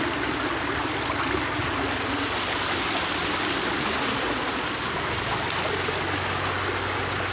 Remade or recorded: recorded